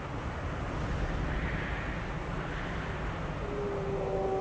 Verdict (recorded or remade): recorded